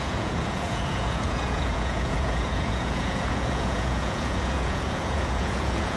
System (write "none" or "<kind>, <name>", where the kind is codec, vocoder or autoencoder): vocoder, Vocos